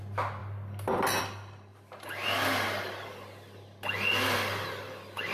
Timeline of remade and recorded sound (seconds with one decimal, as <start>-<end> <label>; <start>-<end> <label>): 0.0-5.3 recorded